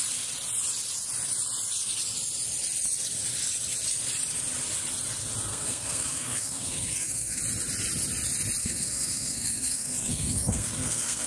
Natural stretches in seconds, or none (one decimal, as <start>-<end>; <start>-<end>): 0.0-5.5; 7.4-8.6